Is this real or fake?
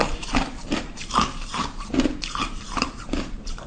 fake